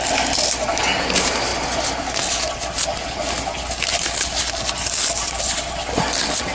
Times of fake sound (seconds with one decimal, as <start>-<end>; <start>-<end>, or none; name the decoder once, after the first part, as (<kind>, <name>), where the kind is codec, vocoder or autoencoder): none